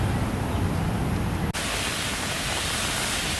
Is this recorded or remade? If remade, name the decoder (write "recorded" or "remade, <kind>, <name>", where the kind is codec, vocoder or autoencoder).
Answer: recorded